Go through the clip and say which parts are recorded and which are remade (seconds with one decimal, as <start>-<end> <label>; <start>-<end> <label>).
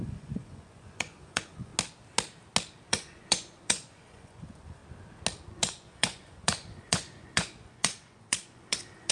0.0-1.7 remade; 1.7-2.9 recorded; 2.9-4.8 remade; 4.8-5.5 recorded; 5.5-9.1 remade